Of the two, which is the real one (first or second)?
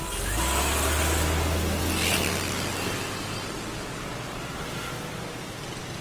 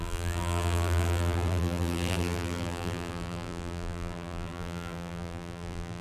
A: first